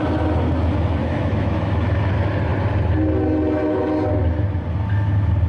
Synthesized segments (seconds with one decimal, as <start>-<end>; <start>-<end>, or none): 1.0-2.1